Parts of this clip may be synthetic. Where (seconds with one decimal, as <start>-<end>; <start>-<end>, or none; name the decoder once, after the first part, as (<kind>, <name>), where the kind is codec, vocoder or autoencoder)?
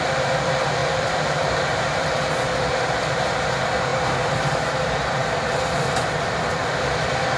0.8-2.9 (vocoder, BigVGAN v2); 3.9-4.6